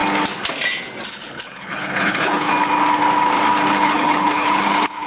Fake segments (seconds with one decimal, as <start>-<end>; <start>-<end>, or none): 1.1-2.5; 3.7-5.1